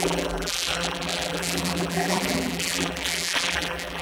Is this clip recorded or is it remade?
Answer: remade